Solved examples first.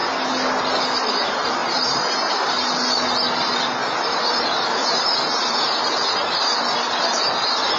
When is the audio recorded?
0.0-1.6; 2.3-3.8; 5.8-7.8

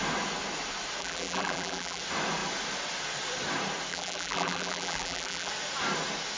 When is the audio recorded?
0.0-1.0; 2.0-3.9; 5.5-6.4